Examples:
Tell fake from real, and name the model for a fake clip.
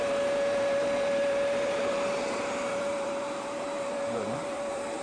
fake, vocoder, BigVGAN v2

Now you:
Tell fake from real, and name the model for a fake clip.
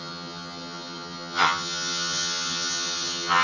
fake, vocoder, HiFi-GAN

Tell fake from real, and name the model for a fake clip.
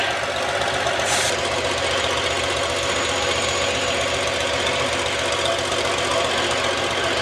real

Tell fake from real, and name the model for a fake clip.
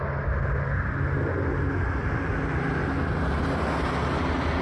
real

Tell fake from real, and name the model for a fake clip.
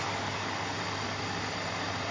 real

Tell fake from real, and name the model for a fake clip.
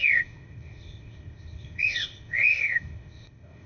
fake, codec, ZipCodec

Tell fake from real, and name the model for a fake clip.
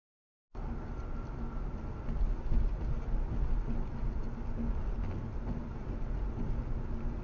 real